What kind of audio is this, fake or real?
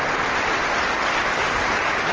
real